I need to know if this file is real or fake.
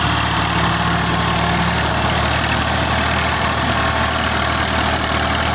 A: real